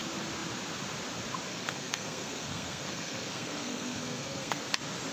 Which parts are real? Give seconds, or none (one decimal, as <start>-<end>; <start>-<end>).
0.0-1.5; 4.6-5.1